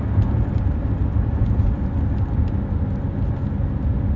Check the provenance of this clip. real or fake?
real